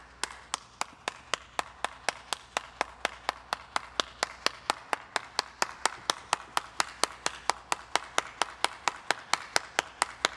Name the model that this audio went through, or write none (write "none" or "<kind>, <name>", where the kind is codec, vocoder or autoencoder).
none